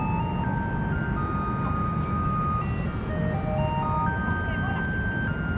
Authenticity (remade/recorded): recorded